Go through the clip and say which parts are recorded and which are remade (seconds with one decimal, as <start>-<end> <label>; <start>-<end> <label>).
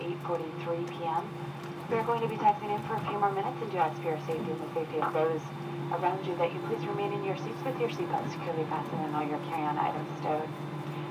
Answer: 0.0-11.1 recorded